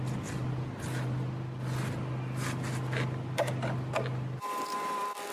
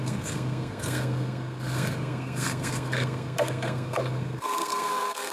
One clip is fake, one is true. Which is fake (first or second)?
second